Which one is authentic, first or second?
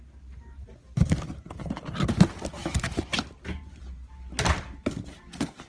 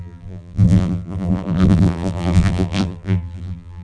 first